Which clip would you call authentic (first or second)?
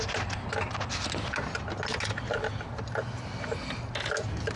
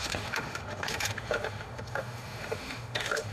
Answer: first